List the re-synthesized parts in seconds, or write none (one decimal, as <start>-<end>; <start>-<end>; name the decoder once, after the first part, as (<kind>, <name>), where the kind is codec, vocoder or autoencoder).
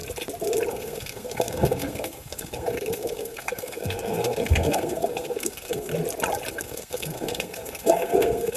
0.7-5.9 (codec, SNAC); 6.5-8.6